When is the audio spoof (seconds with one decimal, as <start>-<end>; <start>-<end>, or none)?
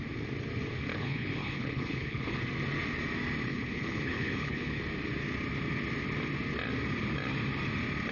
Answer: 0.9-2.4; 3.5-4.8